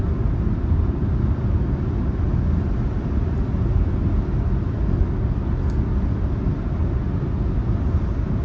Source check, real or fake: real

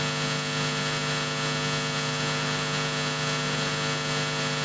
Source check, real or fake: real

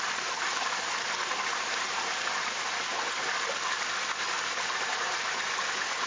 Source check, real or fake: real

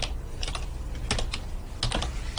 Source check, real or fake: real